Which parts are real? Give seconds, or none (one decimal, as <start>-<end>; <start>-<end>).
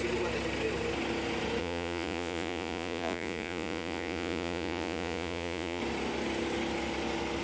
0.0-1.6; 5.8-7.4